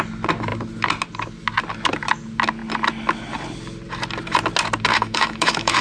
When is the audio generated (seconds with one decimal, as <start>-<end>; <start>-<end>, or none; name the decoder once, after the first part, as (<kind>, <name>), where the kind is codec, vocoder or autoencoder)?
4.9-5.8 (autoencoder, DAC-VAE)